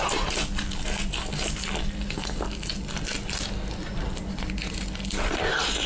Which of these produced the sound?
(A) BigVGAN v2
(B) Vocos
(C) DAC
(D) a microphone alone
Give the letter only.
D